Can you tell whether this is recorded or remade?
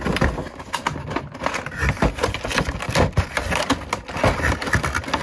recorded